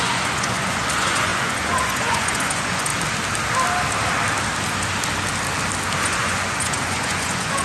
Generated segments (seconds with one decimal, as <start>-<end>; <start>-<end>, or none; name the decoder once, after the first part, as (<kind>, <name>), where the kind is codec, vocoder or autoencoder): 0.0-2.9 (vocoder, Vocos); 6.0-7.6